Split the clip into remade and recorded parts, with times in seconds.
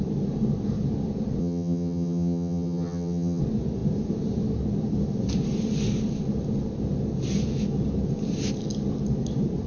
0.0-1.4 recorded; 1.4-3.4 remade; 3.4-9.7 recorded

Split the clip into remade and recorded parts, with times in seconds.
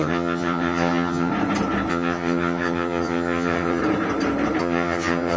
0.0-1.3 remade; 1.3-1.9 recorded; 1.9-3.8 remade; 3.8-4.6 recorded; 4.6-5.4 remade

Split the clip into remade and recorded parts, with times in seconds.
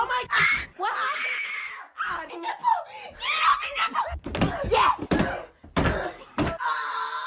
0.0-7.3 recorded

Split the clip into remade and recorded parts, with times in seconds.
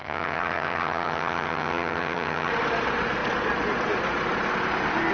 0.0-2.5 remade; 2.5-5.1 recorded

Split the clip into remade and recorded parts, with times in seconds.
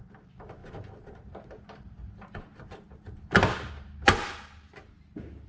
0.0-5.5 recorded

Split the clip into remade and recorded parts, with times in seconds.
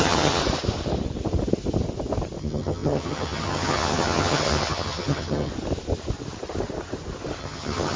0.0-0.4 remade; 0.4-2.4 recorded; 2.4-5.5 remade; 5.5-7.4 recorded; 7.4-8.0 remade